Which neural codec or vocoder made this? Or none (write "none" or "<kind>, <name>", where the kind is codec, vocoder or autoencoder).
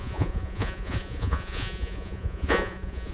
vocoder, Vocos